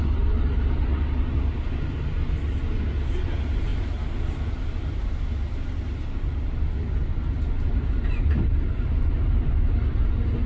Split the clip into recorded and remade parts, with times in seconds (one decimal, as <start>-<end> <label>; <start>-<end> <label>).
0.0-10.5 recorded